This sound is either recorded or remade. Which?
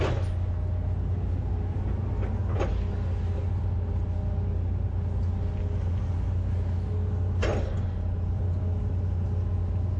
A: recorded